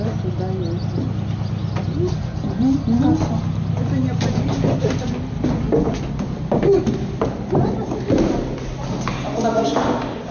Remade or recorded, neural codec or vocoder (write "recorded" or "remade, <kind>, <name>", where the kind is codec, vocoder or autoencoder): recorded